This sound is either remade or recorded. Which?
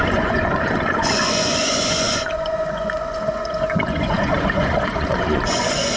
remade